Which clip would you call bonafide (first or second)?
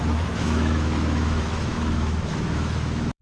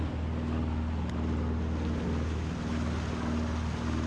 second